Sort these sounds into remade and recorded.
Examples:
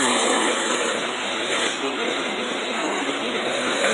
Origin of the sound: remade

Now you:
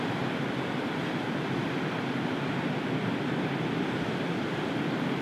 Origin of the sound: remade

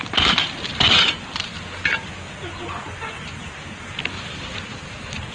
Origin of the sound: recorded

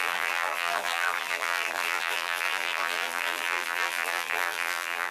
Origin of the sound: remade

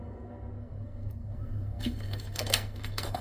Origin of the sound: remade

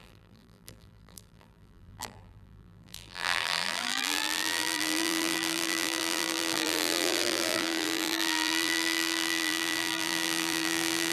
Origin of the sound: remade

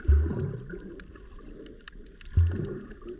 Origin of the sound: recorded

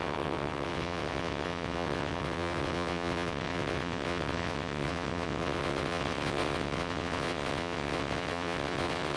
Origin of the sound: remade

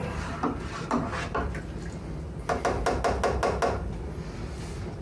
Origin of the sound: recorded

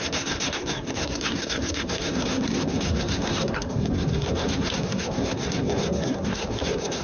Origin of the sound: remade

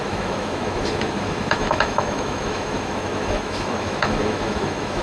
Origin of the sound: remade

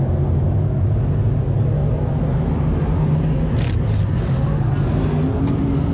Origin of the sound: recorded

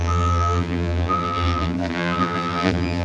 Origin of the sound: remade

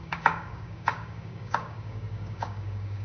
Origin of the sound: remade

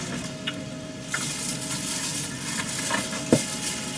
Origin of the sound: recorded